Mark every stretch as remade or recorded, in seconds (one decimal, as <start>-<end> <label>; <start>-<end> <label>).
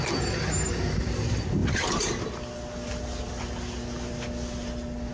0.0-5.1 recorded